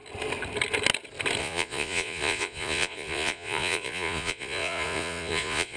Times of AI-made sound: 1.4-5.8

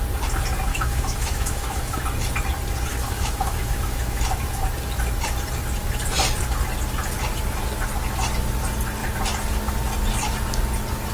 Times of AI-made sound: 0.7-2.0; 2.9-4.2

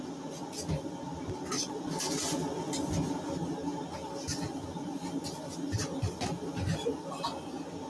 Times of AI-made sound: none

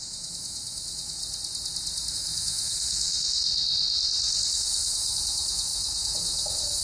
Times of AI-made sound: 0.0-1.2; 2.1-3.5; 4.5-6.8

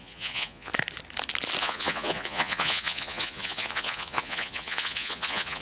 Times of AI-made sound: 0.0-0.7; 1.6-5.6